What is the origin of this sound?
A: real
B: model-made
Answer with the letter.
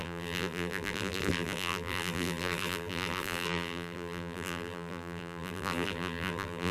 B